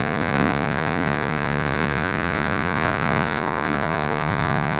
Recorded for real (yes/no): no